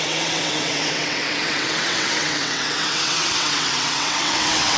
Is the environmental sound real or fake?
fake